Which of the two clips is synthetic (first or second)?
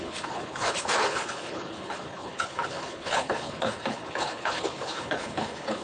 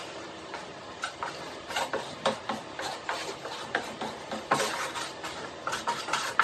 first